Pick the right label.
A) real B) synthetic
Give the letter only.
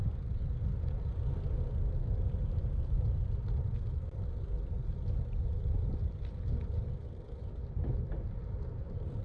A